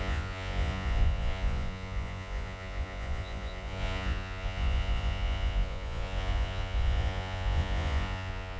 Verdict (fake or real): fake